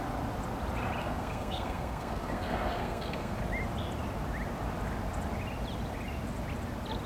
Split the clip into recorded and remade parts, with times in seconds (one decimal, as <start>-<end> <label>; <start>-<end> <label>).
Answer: 0.0-1.0 recorded; 1.0-3.4 remade; 3.4-7.1 recorded